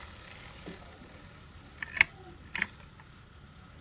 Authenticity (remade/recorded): recorded